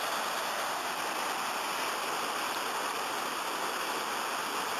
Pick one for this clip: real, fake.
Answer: real